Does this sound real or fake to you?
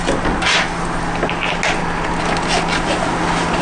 real